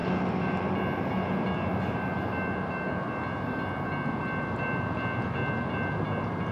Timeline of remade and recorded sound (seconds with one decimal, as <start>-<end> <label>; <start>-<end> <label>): 0.0-6.5 recorded